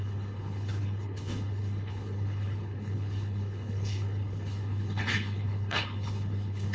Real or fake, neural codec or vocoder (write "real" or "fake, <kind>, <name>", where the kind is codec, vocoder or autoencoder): fake, codec, HILCodec